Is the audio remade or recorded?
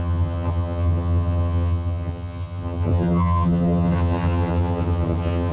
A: remade